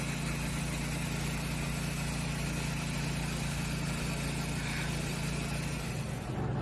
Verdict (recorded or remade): recorded